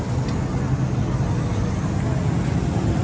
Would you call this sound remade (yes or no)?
no